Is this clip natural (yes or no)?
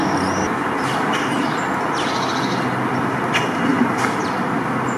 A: yes